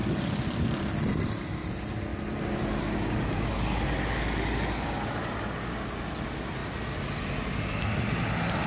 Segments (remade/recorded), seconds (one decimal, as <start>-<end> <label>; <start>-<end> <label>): 0.0-1.7 remade; 1.7-2.1 recorded; 2.1-3.5 remade; 3.5-8.7 recorded